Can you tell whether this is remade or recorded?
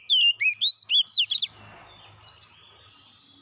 recorded